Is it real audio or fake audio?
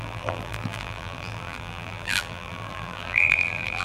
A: fake